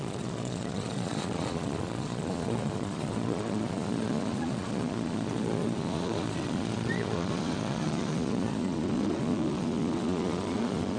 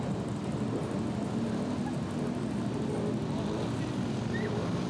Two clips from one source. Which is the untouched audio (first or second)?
second